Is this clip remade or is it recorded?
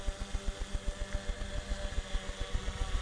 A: recorded